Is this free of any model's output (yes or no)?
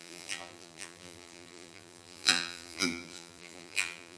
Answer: no